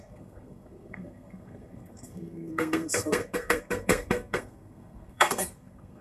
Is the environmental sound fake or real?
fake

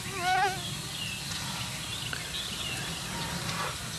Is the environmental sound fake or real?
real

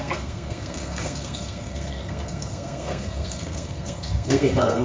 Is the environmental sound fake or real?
fake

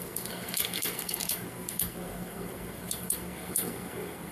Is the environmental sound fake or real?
fake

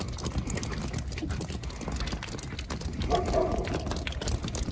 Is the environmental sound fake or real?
real